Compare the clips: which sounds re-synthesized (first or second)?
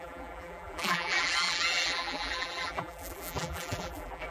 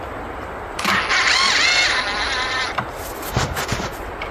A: first